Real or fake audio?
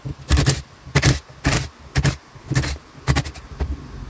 real